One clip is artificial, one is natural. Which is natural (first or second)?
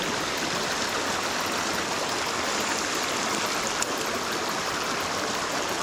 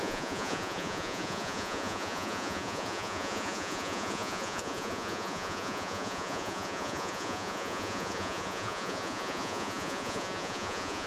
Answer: first